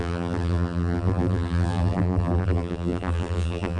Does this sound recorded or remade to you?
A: remade